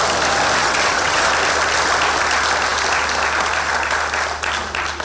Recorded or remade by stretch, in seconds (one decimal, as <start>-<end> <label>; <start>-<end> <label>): 0.0-0.6 recorded; 0.6-1.3 remade; 1.3-5.0 recorded